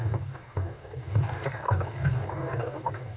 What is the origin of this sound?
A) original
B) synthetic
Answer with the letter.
B